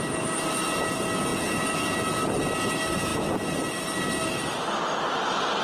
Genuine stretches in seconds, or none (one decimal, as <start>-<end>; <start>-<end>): 0.0-5.6